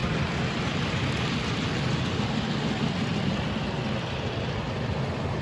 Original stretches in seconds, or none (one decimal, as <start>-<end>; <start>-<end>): 0.0-5.4